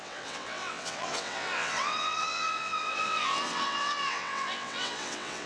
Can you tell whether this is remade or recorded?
remade